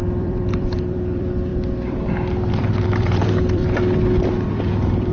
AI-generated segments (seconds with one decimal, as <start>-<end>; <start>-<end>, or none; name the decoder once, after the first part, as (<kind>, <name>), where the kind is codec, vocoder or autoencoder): 0.0-1.5 (vocoder, BigVGAN v2); 2.5-3.6; 4.5-5.1